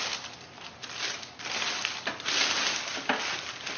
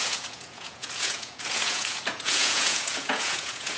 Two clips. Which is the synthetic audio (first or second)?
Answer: second